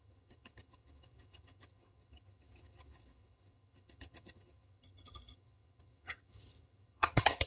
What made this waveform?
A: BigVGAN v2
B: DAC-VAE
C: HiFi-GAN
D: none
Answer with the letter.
C